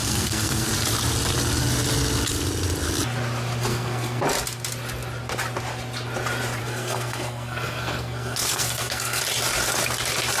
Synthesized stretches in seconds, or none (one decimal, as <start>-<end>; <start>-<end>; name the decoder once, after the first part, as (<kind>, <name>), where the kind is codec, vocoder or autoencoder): 0.0-0.7 (codec, SNAC); 3.7-4.2; 6.6-9.2

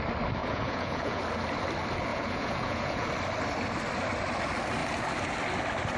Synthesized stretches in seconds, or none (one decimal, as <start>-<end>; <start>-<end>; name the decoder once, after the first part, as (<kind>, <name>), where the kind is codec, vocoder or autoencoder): 0.4-1.2 (vocoder, Vocos); 2.1-3.1

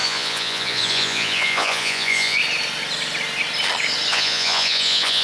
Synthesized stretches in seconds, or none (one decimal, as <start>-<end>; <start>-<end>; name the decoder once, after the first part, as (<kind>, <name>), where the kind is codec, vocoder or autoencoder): 0.0-2.4 (vocoder, Vocos); 4.1-5.2

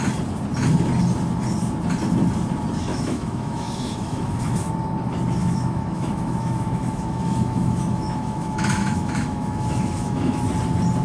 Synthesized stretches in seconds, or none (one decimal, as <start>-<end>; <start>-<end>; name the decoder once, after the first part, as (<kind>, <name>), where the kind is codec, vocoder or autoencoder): 2.9-4.7 (autoencoder, DAC-VAE); 5.4-10.4

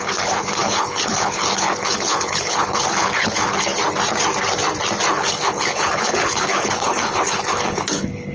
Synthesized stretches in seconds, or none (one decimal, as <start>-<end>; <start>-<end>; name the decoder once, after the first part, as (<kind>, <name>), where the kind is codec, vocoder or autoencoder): 0.0-3.7 (codec, HILCodec); 5.1-8.3

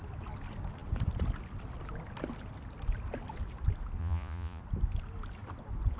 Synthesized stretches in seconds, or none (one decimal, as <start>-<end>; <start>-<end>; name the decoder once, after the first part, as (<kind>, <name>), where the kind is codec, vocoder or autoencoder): 4.0-4.6 (vocoder, Vocos)

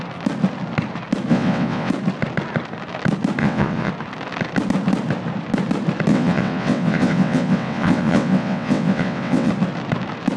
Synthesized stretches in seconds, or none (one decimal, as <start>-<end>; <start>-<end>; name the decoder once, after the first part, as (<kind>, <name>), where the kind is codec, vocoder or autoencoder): 1.3-1.9 (vocoder, WaveNeXt); 3.4-3.9; 6.1-9.5